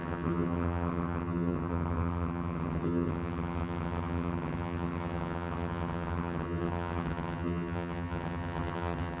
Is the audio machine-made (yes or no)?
yes